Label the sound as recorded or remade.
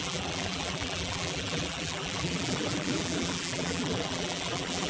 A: remade